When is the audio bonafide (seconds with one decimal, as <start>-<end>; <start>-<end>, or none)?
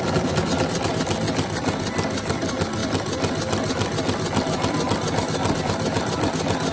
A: 0.0-6.7